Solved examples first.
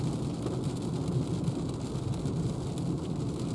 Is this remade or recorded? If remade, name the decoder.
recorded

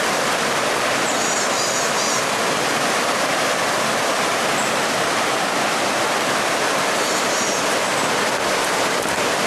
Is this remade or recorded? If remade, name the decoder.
recorded